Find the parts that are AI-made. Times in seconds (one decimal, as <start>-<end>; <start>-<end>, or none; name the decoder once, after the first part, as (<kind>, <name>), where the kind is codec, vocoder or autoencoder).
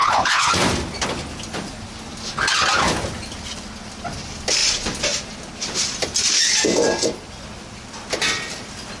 0.0-0.5 (codec, HILCodec)